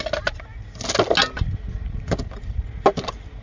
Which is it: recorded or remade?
recorded